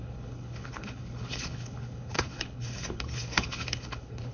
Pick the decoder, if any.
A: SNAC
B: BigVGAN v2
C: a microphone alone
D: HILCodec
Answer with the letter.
D